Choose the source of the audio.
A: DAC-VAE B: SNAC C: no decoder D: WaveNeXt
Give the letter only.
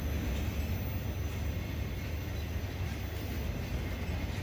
C